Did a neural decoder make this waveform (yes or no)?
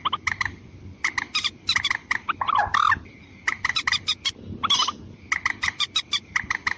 no